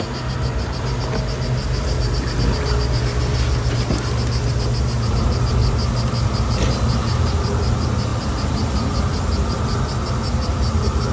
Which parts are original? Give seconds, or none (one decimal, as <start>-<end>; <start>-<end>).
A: 0.0-11.1